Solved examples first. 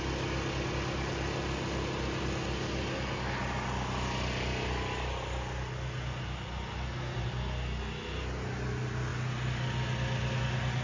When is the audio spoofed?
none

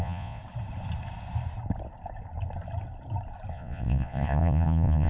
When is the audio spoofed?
0.0-0.4 (vocoder, Vocos); 3.5-5.1

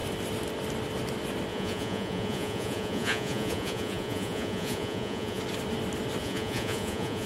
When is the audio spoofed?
1.5-5.4 (vocoder, Vocos); 6.2-7.3

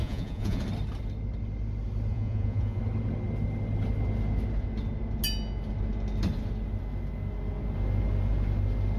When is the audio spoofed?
0.0-0.6 (vocoder, Vocos); 2.1-2.8

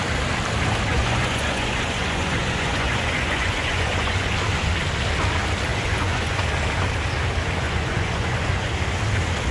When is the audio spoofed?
0.9-4.3 (vocoder, Vocos); 5.7-6.4; 7.6-8.7

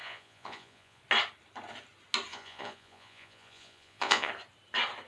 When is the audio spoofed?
0.0-1.0 (vocoder, Vocos); 2.3-4.3

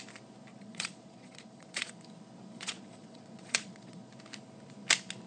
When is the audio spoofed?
0.5-1.9 (vocoder, Vocos); 2.5-4.1

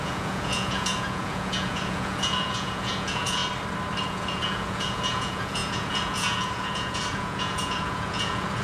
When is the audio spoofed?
0.0-3.4 (vocoder, Vocos); 4.0-8.6